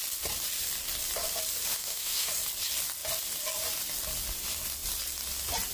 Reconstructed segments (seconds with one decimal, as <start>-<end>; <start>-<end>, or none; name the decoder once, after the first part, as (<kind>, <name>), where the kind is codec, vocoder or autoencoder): 1.7-2.3 (autoencoder, DAC-VAE)